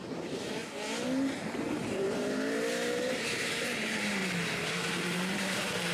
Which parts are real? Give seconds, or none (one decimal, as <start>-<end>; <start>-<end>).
0.6-1.9; 4.2-4.7